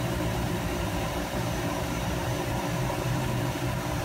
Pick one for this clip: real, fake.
fake